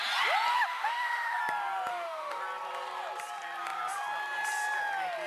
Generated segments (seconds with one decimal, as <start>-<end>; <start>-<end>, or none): 0.5-1.4; 1.9-2.4